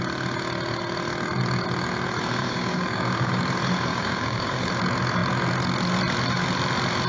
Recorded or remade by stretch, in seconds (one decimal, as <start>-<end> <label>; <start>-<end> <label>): 0.0-2.4 recorded; 2.4-3.4 remade; 3.4-3.9 recorded; 3.9-4.7 remade; 4.7-7.1 recorded